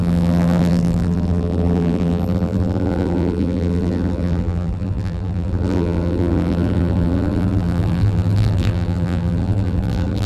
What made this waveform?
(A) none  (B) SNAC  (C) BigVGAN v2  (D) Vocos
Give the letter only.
C